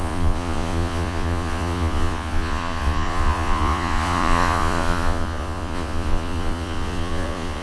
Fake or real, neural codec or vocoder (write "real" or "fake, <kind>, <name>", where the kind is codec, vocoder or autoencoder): fake, vocoder, Vocos